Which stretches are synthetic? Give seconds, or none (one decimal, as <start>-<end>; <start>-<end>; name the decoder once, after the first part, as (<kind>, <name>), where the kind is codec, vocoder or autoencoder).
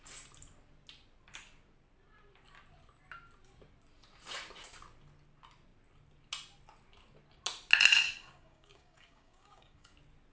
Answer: 8.0-9.9 (codec, DAC)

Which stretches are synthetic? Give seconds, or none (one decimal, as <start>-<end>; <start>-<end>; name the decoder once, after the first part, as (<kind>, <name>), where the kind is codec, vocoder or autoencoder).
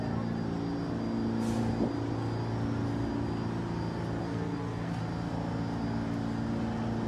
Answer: 4.2-5.0 (codec, SNAC)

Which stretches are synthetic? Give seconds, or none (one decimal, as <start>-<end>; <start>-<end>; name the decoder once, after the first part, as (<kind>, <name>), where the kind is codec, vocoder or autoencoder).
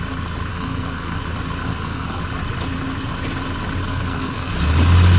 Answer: 0.5-1.2 (codec, SNAC); 1.6-2.2; 3.8-4.5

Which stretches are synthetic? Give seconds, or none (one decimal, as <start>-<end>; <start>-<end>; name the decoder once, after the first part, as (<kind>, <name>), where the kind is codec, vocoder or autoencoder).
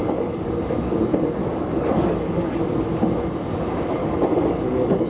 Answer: 0.0-0.5 (codec, DAC); 1.4-2.6; 4.0-5.1